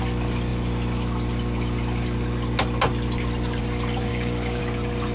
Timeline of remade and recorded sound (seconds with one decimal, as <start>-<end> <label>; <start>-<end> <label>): 0.0-4.1 recorded; 4.1-4.6 remade; 4.6-5.1 recorded